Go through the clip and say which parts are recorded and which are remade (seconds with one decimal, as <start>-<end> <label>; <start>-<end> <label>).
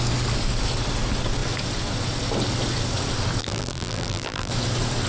0.0-3.4 recorded; 3.4-4.5 remade; 4.5-5.1 recorded